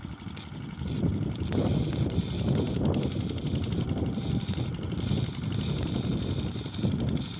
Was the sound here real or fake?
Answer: real